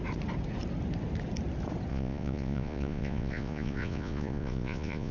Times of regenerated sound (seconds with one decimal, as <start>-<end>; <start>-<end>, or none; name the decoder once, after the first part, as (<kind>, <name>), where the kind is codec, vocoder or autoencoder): 1.9-5.1 (vocoder, Vocos)